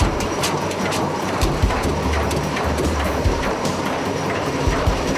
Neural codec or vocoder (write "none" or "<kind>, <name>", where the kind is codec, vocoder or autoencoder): vocoder, BigVGAN v2